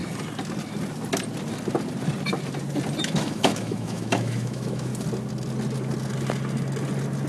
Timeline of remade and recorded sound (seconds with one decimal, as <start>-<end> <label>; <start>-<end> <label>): 0.0-3.0 recorded; 3.0-4.9 remade; 4.9-7.3 recorded